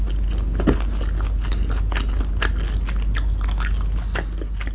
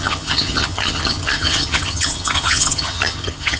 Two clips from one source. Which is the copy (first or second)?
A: second